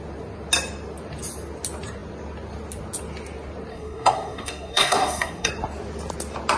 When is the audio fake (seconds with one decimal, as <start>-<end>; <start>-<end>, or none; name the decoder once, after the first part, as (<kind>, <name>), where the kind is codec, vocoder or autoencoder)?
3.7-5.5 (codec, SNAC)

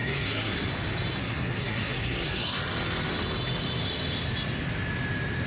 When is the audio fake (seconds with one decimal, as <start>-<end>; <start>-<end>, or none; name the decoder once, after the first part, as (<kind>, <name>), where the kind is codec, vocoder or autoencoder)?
0.0-0.7 (codec, SNAC); 1.2-2.6

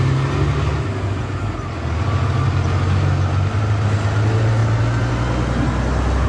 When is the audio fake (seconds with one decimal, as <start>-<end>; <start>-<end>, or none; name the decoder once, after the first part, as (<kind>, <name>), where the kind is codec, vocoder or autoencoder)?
none

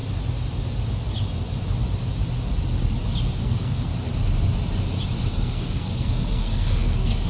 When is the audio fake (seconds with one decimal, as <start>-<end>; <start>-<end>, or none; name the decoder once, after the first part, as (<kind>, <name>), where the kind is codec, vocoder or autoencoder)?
3.4-3.9 (codec, SNAC); 5.3-7.3

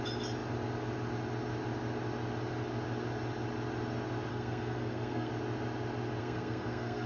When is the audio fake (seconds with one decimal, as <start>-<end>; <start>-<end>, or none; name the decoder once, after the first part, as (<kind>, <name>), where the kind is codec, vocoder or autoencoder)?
4.3-5.3 (codec, SNAC); 6.2-7.1

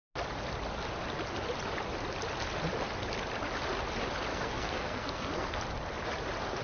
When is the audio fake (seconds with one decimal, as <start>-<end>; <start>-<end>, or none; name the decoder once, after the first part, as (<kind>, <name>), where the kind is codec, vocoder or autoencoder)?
4.3-5.6 (codec, SNAC)

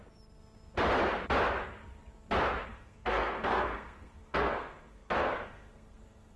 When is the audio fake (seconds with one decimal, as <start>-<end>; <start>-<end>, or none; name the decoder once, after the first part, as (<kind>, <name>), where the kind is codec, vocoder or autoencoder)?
2.7-6.4 (codec, SNAC)